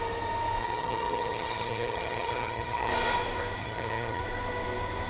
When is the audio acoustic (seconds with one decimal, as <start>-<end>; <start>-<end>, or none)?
0.0-0.6; 2.9-3.6; 4.2-5.1